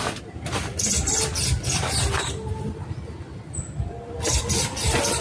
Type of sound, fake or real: real